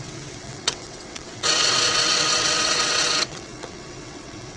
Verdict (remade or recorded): remade